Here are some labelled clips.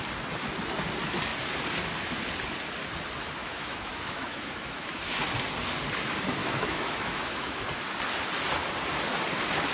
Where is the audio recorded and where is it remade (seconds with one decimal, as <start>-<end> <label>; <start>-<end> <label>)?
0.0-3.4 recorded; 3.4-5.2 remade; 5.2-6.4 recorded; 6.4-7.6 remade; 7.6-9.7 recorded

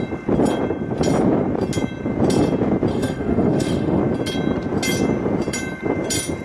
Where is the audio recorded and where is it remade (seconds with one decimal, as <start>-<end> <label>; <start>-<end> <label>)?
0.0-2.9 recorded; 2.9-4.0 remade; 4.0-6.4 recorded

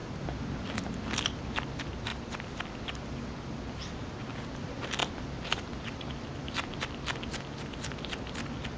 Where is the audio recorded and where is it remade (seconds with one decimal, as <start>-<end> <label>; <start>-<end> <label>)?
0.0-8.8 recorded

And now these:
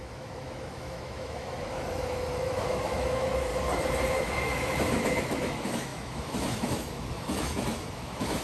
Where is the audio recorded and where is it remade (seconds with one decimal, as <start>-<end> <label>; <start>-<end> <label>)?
0.0-3.5 remade; 3.5-4.1 recorded; 4.1-8.4 remade